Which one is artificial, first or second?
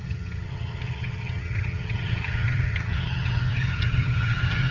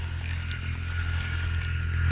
first